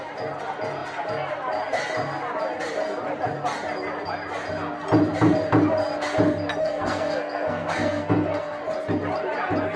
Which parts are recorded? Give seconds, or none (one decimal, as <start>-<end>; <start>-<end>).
0.0-6.6; 8.6-9.8